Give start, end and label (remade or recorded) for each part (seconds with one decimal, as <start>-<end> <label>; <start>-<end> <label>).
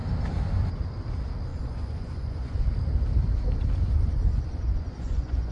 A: 0.0-1.5 recorded; 1.5-2.7 remade; 2.7-4.3 recorded; 4.3-5.5 remade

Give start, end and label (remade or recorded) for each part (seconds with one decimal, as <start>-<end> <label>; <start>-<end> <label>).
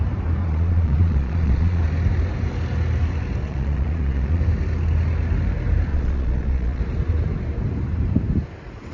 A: 0.0-0.4 recorded; 0.4-1.8 remade; 1.8-3.4 recorded; 3.4-4.4 remade; 4.4-5.9 recorded; 5.9-6.8 remade; 6.8-8.9 recorded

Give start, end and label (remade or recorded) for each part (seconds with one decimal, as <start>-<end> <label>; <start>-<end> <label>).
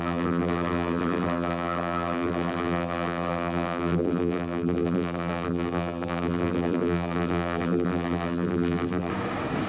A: 0.0-9.1 remade; 9.1-9.7 recorded